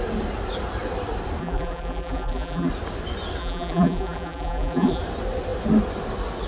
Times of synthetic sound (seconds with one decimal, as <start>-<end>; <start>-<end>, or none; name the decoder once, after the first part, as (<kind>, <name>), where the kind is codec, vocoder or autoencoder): 1.4-2.7 (vocoder, BigVGAN v2); 3.4-5.0